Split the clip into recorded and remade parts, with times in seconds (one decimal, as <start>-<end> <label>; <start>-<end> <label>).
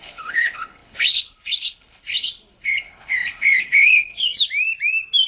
0.0-4.3 remade; 4.3-5.3 recorded